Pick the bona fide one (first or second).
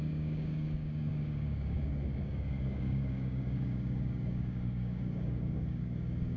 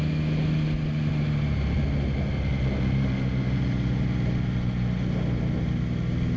second